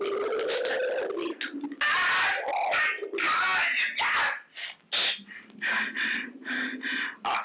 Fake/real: real